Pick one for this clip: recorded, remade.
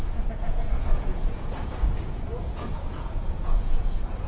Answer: remade